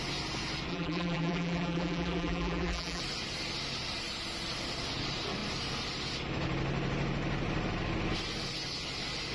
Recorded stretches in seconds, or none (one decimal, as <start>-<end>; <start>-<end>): 0.0-0.7; 3.0-9.3